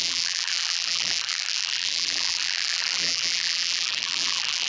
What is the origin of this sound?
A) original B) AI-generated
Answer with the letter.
B